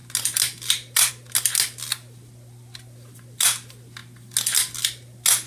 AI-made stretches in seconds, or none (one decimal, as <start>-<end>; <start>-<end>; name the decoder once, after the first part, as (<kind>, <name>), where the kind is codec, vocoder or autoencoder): none